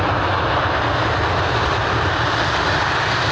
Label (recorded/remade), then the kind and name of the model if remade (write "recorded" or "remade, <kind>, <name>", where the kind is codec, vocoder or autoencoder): recorded